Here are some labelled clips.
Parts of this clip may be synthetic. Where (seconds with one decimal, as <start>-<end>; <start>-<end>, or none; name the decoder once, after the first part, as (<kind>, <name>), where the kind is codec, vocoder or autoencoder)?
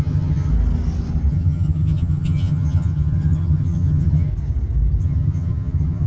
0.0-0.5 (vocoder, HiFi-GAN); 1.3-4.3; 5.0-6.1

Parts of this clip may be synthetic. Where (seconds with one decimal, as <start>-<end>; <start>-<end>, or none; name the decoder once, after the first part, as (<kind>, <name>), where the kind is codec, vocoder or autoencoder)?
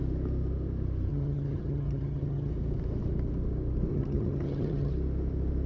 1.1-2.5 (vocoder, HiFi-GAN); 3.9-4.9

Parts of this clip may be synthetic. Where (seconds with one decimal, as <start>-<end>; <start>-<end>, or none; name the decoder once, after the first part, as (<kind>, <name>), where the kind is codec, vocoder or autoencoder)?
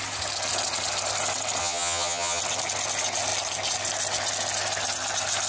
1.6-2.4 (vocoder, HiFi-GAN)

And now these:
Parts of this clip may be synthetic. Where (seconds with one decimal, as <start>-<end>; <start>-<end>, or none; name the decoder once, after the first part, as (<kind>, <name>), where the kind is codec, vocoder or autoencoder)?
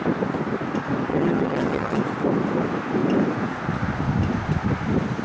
1.1-2.0 (vocoder, HiFi-GAN)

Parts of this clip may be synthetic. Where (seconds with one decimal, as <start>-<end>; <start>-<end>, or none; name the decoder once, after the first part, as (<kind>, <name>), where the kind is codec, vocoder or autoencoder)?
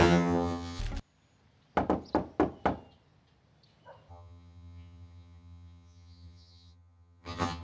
0.0-0.8 (vocoder, HiFi-GAN); 4.1-7.6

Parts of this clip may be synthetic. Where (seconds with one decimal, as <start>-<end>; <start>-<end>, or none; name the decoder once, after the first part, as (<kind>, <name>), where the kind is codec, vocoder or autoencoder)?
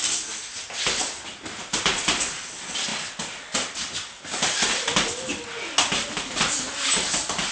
none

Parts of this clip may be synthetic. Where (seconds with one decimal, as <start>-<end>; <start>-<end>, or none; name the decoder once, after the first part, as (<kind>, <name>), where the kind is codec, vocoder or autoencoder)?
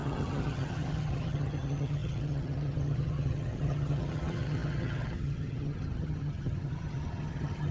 0.0-7.7 (vocoder, HiFi-GAN)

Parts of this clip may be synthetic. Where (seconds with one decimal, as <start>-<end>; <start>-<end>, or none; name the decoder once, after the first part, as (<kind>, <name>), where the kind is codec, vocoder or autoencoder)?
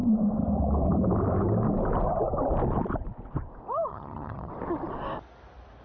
3.9-4.5 (vocoder, HiFi-GAN)